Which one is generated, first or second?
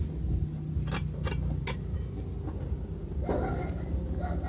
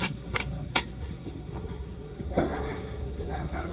second